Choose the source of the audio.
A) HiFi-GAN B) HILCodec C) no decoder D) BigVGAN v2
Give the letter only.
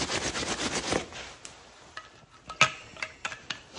C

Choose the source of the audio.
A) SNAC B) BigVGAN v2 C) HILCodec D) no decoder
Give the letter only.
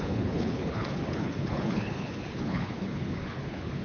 C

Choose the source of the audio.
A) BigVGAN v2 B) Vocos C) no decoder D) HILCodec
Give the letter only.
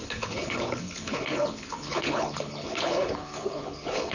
D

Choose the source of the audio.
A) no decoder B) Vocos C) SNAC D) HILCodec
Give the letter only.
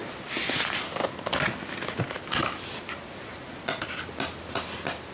A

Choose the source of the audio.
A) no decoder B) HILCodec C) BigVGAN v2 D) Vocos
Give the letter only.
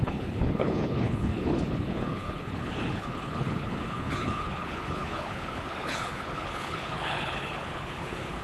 B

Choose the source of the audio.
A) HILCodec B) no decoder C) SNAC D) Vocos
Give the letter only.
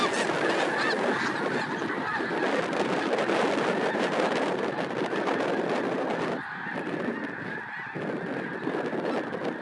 B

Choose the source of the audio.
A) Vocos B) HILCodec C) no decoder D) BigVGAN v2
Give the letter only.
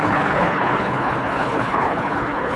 B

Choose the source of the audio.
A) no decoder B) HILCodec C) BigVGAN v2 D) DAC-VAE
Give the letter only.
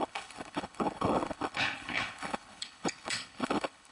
B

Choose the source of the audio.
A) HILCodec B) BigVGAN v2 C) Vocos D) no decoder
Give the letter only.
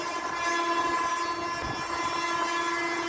D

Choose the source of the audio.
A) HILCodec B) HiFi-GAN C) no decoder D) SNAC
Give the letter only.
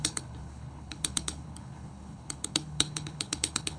A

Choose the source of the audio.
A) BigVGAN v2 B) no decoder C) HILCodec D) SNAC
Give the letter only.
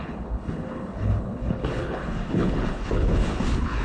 C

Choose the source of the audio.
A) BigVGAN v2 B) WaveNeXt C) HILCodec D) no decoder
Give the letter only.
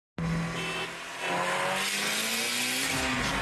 D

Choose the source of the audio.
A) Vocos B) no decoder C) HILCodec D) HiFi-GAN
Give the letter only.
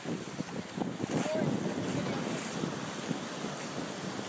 B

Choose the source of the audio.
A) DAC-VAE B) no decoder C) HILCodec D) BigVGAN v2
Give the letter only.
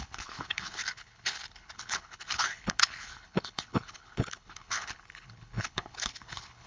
C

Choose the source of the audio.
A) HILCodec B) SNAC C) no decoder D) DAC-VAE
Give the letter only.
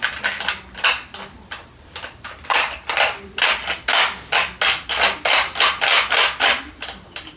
C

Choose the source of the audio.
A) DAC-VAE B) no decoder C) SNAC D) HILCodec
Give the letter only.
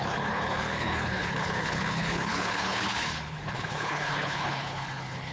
D